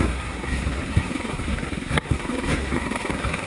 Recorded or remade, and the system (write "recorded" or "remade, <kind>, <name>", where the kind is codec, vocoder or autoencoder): remade, codec, SNAC